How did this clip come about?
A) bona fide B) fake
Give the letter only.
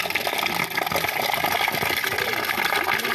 A